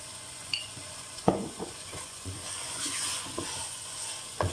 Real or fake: fake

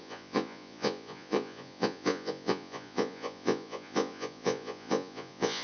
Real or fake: fake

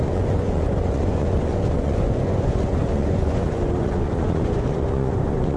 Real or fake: fake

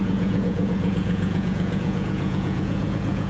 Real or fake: fake